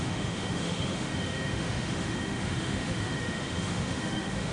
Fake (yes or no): yes